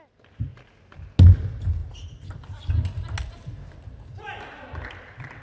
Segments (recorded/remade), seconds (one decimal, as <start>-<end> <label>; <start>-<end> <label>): 0.0-5.4 recorded